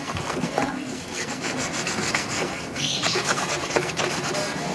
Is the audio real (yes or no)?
no